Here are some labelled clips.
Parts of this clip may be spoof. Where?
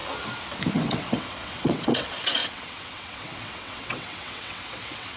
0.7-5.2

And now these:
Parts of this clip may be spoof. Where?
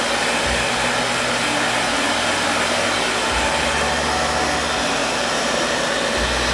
5.0-6.0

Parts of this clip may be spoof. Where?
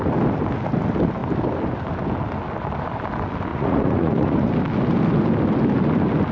3.5-4.5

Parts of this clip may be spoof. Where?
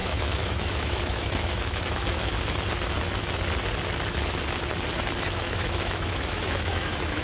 0.0-2.3; 5.4-7.2